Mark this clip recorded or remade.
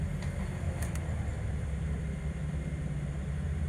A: recorded